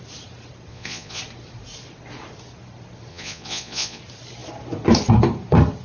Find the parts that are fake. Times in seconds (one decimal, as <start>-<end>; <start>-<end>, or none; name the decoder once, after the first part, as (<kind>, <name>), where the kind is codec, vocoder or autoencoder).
0.7-1.2 (vocoder, Vocos); 3.1-4.0